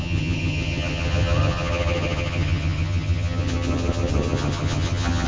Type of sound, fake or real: fake